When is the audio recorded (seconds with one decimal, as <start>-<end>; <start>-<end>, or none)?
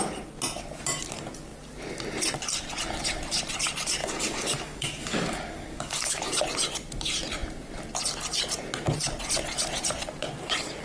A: 0.0-4.0; 6.4-10.8